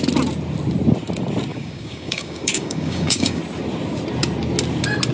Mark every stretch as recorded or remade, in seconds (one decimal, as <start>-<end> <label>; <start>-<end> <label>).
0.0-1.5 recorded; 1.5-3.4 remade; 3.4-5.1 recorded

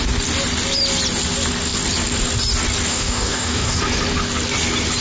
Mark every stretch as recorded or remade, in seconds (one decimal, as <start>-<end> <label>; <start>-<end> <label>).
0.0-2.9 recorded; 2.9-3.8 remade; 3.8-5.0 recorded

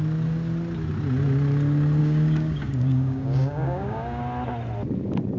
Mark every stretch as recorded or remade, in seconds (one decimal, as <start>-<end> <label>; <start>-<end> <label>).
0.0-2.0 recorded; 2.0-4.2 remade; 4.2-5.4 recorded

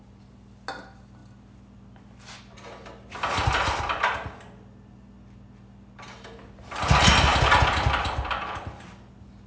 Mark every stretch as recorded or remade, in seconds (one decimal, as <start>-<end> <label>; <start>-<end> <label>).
0.0-9.5 recorded

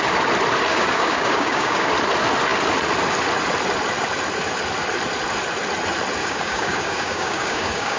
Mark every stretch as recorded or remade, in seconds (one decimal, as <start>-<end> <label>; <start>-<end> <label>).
0.0-0.7 recorded; 0.7-1.9 remade; 1.9-6.2 recorded; 6.2-8.0 remade

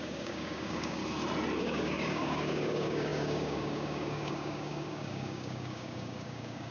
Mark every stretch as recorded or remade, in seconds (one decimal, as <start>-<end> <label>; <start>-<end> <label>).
0.0-1.0 remade; 1.0-1.6 recorded; 1.6-6.7 remade